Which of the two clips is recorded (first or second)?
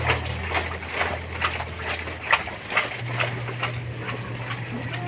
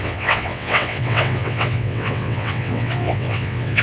first